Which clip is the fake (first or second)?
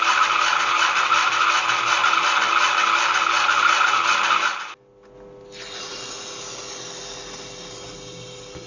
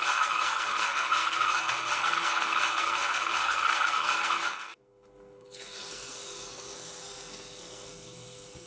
second